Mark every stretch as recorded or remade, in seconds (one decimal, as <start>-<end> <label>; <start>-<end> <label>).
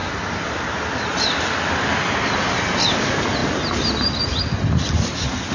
0.0-0.7 remade; 0.7-3.4 recorded; 3.4-4.4 remade; 4.4-5.5 recorded